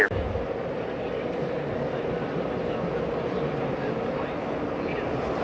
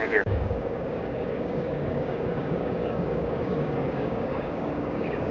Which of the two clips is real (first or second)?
first